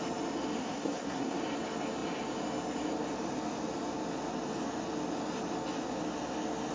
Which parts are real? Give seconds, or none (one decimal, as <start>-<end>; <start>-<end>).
0.0-0.6; 1.4-6.7